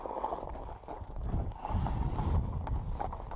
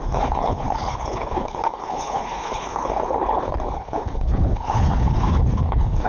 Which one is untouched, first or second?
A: first